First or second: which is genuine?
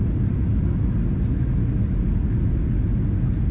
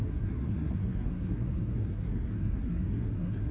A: first